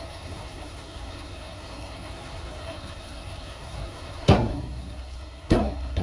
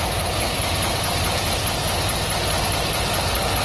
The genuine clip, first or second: second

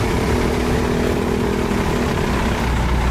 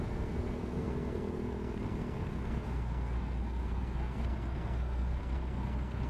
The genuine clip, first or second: first